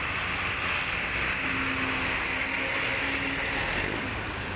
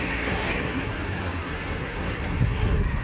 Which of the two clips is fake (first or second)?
second